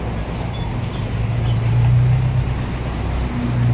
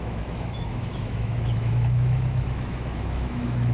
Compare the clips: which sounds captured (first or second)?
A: first